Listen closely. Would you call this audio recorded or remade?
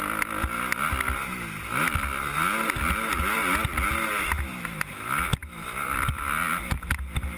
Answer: recorded